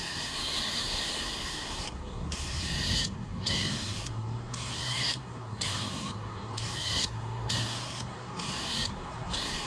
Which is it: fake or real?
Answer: fake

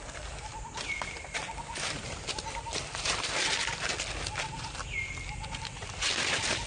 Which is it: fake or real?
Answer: real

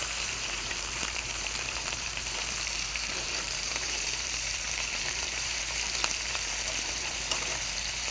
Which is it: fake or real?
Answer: fake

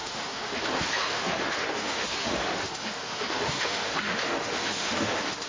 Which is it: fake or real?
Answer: fake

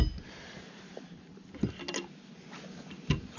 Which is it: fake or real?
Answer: real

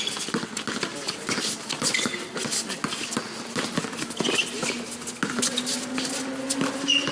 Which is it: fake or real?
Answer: real